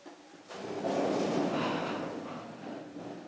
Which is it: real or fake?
real